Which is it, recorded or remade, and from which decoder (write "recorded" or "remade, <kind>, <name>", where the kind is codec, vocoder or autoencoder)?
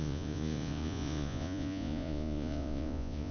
remade, vocoder, Vocos